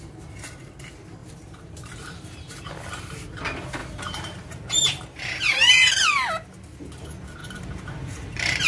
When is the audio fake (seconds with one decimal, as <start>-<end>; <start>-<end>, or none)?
1.2-2.7; 3.8-5.9; 7.4-8.7